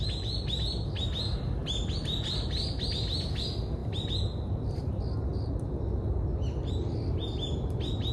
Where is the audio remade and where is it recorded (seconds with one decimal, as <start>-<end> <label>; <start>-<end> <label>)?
0.0-8.1 recorded